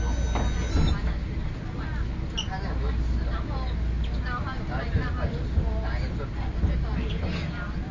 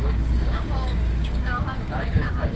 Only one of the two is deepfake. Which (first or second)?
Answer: second